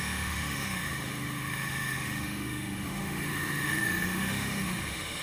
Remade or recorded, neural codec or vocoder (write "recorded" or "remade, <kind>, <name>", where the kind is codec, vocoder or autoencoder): remade, autoencoder, DAC-VAE